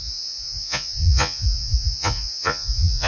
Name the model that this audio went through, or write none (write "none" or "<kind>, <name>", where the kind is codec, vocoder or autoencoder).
vocoder, Vocos